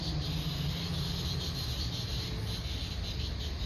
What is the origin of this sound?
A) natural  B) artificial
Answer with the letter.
A